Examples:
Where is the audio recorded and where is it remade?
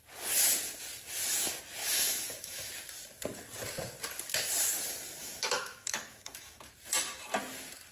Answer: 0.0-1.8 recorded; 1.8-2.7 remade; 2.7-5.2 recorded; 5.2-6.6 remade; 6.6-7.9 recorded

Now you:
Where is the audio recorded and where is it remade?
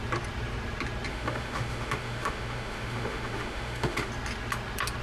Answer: 0.0-1.1 recorded; 1.1-4.1 remade; 4.1-5.0 recorded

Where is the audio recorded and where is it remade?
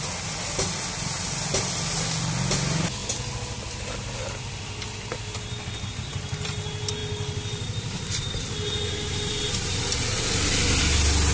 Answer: 0.0-11.3 recorded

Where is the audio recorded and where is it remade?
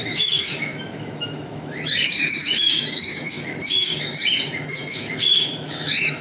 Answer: 0.0-6.2 remade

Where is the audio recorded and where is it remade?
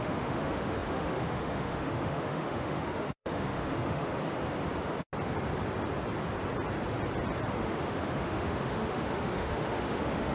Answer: 0.0-4.1 remade; 4.1-7.6 recorded; 7.6-10.3 remade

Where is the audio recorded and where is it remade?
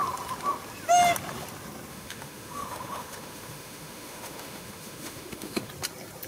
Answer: 0.0-1.9 recorded; 1.9-5.7 remade; 5.7-6.3 recorded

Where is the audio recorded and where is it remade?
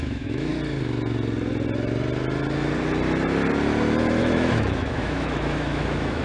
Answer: 0.0-0.5 remade; 0.5-4.2 recorded; 4.2-6.2 remade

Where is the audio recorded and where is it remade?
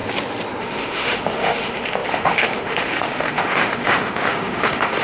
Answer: 0.0-0.6 recorded; 0.6-5.0 remade